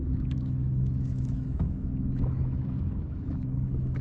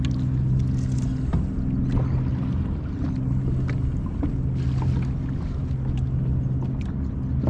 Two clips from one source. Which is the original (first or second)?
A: second